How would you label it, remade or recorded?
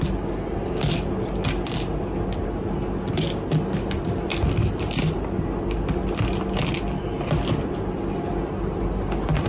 recorded